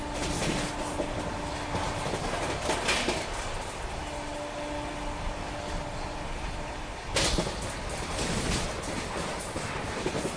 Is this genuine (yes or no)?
yes